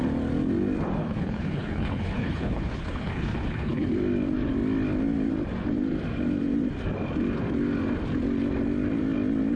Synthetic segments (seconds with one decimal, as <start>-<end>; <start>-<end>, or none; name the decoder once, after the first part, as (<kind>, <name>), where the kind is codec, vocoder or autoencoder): 1.0-3.9 (codec, HILCodec)